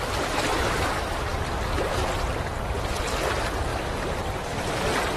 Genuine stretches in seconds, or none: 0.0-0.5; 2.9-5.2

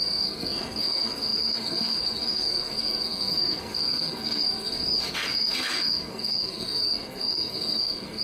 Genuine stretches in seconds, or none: none

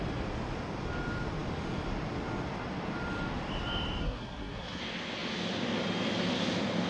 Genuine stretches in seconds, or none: 0.0-4.0; 4.8-6.9

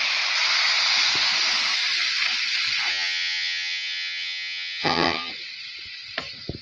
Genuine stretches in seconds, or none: 0.0-2.9; 5.3-6.6

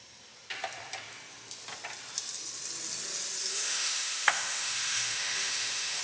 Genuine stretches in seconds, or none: 0.0-3.5

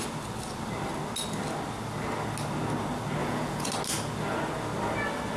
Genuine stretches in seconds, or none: 0.0-3.2; 3.7-5.4